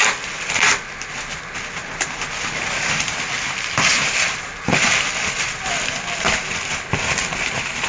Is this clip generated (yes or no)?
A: no